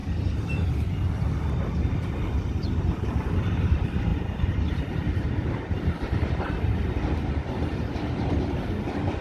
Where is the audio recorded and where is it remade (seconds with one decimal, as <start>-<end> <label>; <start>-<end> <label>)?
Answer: 0.0-9.2 recorded